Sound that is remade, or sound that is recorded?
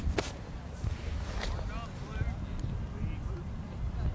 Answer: recorded